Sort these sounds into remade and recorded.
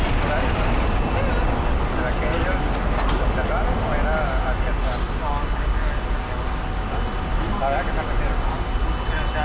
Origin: recorded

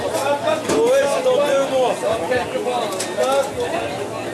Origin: recorded